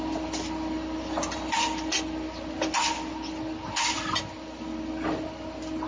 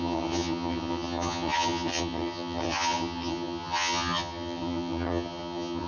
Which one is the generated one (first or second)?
second